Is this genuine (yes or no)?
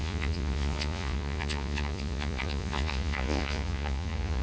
no